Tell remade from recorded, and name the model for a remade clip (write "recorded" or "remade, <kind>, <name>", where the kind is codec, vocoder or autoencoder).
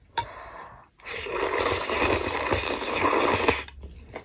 recorded